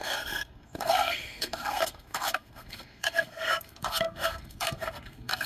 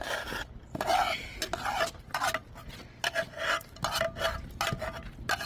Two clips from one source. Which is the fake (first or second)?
first